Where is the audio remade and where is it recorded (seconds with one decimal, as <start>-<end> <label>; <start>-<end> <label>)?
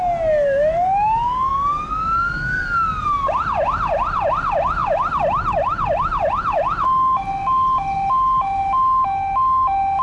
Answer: 0.0-10.0 recorded